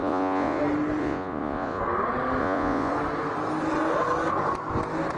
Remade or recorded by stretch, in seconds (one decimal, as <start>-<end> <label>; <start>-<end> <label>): 0.0-0.6 remade; 0.6-1.0 recorded; 1.0-1.8 remade; 1.8-2.4 recorded; 2.4-2.9 remade; 2.9-5.2 recorded